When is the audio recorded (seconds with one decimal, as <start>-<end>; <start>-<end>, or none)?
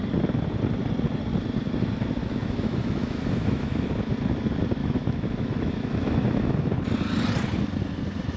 0.0-2.2; 3.9-4.8; 6.7-8.4